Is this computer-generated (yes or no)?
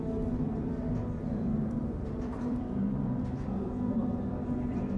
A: yes